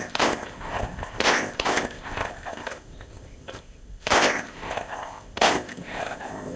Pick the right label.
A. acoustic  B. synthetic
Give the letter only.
B